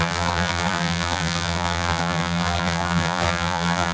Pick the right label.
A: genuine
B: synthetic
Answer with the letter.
B